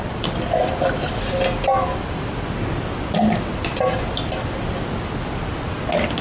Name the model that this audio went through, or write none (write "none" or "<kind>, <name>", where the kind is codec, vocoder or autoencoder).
none